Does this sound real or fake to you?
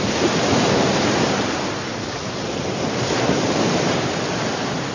real